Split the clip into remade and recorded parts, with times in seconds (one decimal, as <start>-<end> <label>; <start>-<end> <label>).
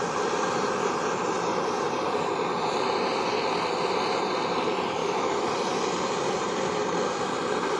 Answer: 0.0-5.0 recorded; 5.0-5.5 remade; 5.5-7.8 recorded